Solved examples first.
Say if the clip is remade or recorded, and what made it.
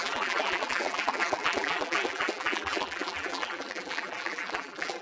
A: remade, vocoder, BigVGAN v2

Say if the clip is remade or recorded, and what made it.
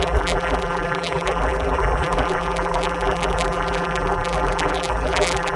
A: remade, vocoder, BigVGAN v2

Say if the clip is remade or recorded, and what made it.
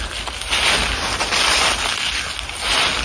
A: recorded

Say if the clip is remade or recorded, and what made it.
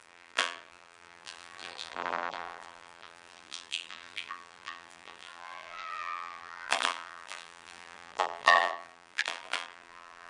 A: remade, vocoder, BigVGAN v2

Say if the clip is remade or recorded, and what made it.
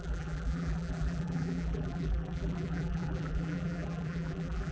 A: remade, vocoder, BigVGAN v2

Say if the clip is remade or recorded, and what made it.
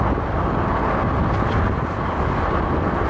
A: recorded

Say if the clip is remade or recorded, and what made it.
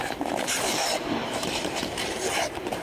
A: remade, vocoder, BigVGAN v2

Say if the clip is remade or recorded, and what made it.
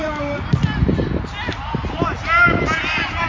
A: recorded